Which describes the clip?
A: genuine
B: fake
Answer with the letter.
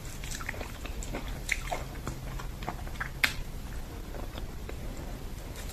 B